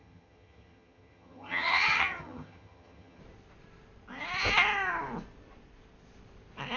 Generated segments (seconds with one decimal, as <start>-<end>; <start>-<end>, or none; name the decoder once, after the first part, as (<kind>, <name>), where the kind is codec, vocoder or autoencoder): 0.0-3.2 (vocoder, HiFi-GAN)